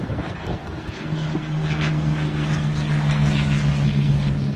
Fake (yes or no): yes